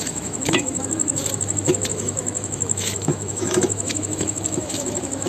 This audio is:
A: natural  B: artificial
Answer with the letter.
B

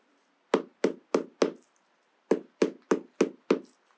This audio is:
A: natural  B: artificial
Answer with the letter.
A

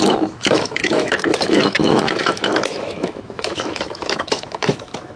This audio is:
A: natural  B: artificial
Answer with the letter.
B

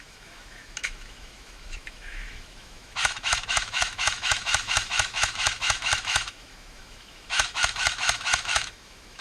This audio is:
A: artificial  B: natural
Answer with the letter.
A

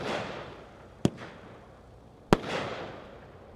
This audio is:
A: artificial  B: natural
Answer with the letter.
B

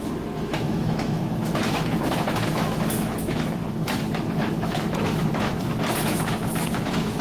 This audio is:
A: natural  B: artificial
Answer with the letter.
B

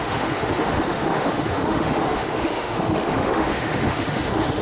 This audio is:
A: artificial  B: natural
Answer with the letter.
A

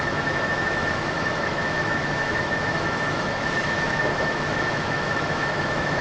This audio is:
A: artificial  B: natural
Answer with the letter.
A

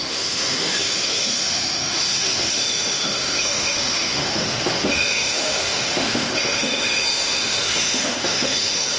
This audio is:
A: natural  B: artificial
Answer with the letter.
B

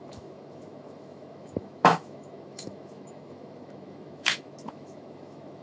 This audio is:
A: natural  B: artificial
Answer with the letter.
B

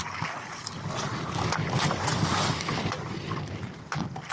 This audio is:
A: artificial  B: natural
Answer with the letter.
B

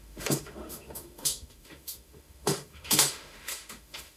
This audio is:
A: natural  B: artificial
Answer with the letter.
B